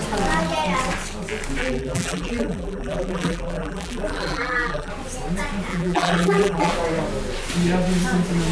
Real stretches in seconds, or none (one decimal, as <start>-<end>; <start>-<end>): 0.0-1.6; 4.9-5.7; 6.7-8.5

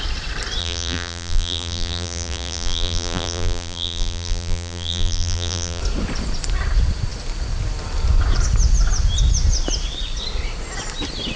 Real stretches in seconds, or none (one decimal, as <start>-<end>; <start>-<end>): 0.0-0.6; 5.8-11.4

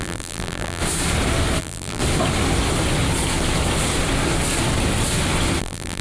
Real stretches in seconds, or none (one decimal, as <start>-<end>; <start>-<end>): 0.8-1.6; 2.0-5.6